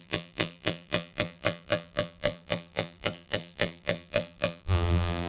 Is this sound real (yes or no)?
no